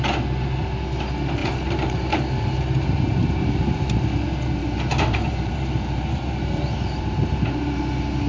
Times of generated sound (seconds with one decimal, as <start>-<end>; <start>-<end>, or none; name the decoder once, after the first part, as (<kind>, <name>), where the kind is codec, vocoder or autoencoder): 1.4-3.9 (vocoder, BigVGAN v2); 4.6-7.8